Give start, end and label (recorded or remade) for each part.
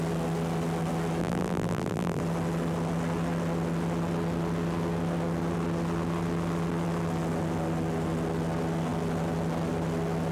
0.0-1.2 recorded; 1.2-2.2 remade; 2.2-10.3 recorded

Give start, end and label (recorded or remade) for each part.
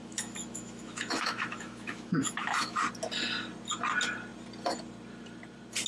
0.0-2.8 remade; 2.8-5.9 recorded